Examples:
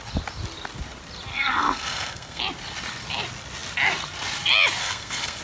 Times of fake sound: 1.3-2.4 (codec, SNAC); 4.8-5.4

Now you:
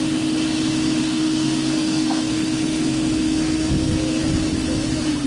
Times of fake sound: 1.0-4.2 (codec, SNAC)

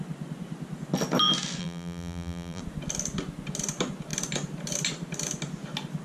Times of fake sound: 1.6-2.6 (vocoder, BigVGAN v2)

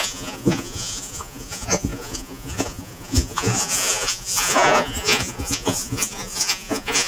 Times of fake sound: 0.0-7.1 (vocoder, Vocos)